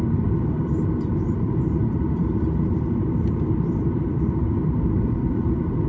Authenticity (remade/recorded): remade